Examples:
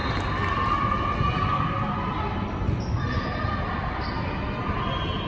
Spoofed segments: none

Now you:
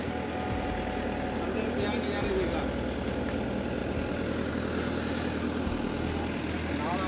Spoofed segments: none